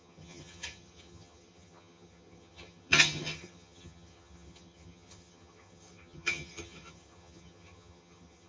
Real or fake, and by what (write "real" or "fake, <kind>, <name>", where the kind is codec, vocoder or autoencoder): fake, vocoder, HiFi-GAN